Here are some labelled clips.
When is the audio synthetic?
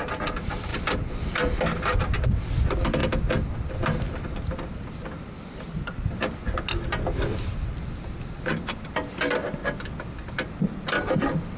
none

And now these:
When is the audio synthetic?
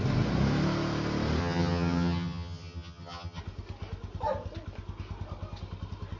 1.4-3.4 (vocoder, HiFi-GAN)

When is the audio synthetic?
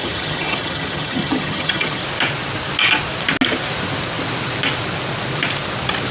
0.0-2.0 (vocoder, HiFi-GAN)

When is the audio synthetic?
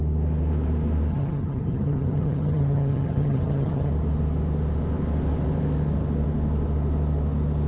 1.1-3.9 (vocoder, HiFi-GAN)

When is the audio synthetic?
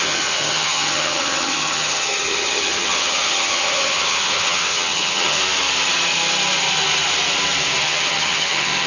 0.0-5.4 (vocoder, HiFi-GAN); 7.8-8.9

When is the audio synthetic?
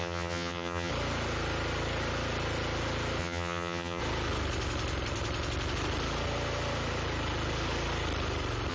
0.0-0.9 (vocoder, HiFi-GAN); 3.2-4.0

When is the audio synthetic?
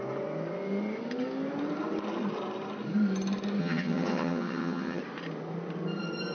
3.6-5.0 (vocoder, HiFi-GAN)